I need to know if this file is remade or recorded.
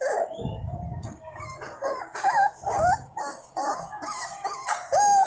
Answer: remade